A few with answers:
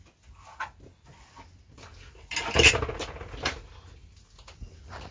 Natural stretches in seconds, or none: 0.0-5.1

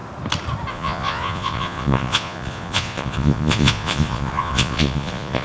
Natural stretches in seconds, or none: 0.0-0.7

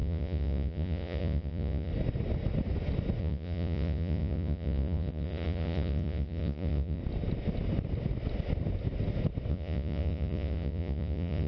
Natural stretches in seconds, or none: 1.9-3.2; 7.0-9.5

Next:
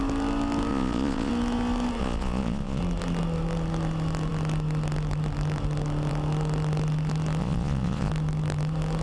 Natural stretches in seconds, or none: 0.0-0.7; 1.3-2.0; 2.8-7.4; 8.1-9.0

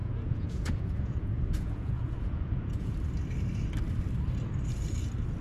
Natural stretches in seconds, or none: 2.9-5.4

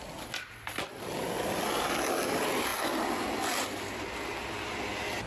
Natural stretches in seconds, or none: 0.0-5.3